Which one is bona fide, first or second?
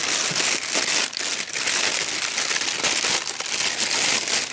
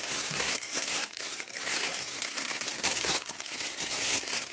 first